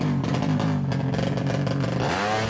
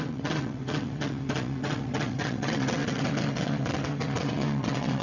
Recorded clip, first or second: first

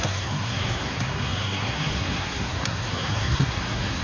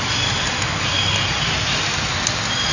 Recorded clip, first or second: second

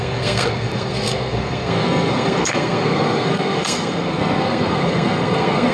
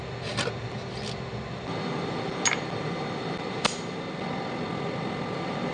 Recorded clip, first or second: second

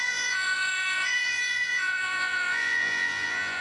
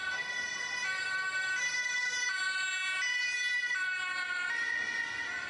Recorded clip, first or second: second